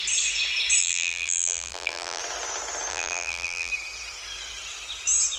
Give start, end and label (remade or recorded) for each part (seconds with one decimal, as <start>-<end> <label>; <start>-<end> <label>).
0.0-0.8 recorded; 0.8-2.2 remade; 2.2-2.9 recorded; 2.9-3.7 remade; 3.7-5.4 recorded